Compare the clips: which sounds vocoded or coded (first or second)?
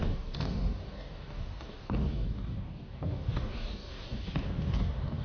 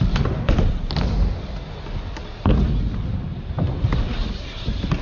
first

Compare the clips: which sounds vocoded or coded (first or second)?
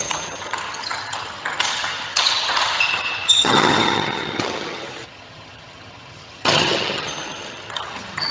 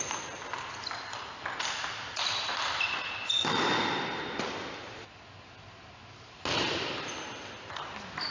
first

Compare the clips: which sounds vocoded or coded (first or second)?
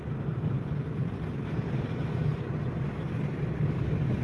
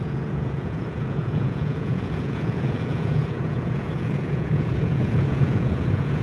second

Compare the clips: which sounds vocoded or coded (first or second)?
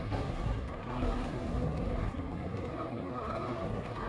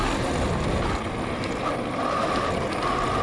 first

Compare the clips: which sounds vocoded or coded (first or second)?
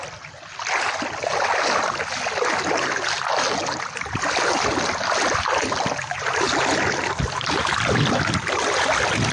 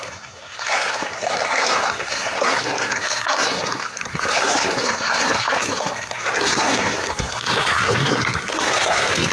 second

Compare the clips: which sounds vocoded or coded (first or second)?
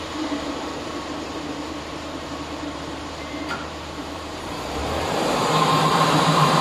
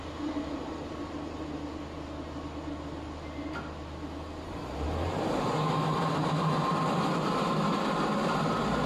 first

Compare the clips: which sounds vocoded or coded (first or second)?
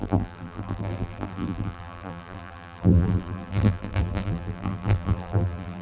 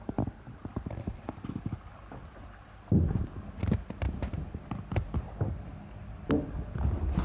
first